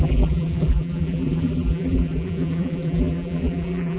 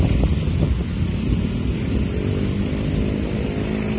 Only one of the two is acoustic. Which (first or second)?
second